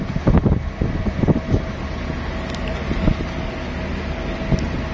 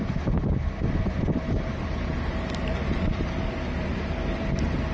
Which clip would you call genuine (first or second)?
first